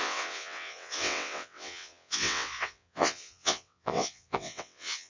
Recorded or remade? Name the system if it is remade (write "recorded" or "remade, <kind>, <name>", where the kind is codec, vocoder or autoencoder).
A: remade, vocoder, WaveNeXt